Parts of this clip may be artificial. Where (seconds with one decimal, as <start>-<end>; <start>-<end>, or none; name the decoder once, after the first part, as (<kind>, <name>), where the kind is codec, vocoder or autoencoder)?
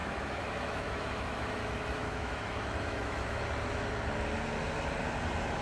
0.0-3.4 (autoencoder, DAC-VAE)